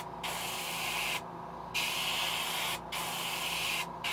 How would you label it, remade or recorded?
recorded